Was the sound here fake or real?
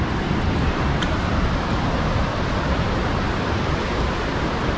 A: fake